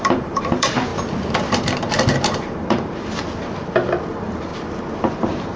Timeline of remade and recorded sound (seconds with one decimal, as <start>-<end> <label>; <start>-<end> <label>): 0.0-0.9 remade; 0.9-1.5 recorded; 1.5-3.2 remade; 3.2-4.1 recorded; 4.1-4.5 remade; 4.5-5.1 recorded; 5.1-5.6 remade